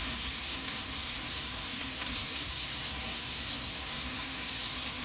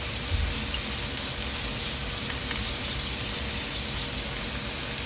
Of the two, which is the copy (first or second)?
first